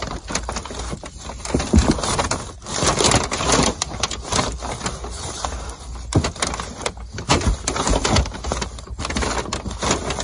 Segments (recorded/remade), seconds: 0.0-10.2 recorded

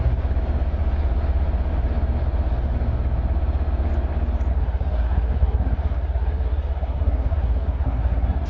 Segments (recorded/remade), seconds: 0.0-4.5 recorded; 4.5-8.5 remade

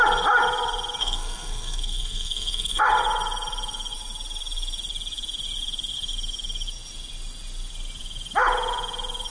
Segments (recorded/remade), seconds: 0.0-1.0 recorded; 1.0-2.8 remade; 2.8-9.3 recorded

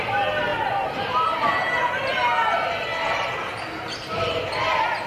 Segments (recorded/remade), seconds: 0.0-5.1 recorded